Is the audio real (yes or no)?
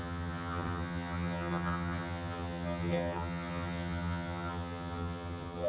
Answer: no